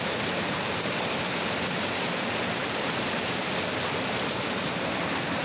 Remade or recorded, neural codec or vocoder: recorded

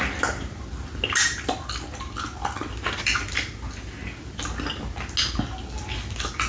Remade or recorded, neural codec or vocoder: recorded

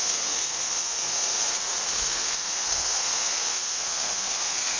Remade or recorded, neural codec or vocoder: remade, codec, SNAC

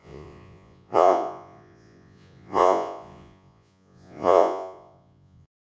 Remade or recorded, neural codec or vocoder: remade, vocoder, Vocos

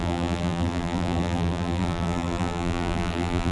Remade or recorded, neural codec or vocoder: remade, vocoder, BigVGAN v2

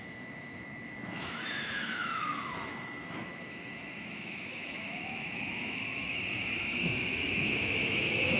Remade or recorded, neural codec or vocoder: remade, autoencoder, DAC-VAE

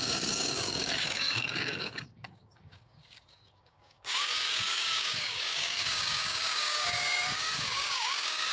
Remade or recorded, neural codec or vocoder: remade, codec, DAC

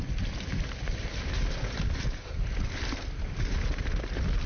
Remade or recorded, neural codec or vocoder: recorded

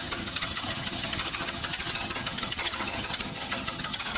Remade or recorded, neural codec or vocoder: remade, vocoder, HiFi-GAN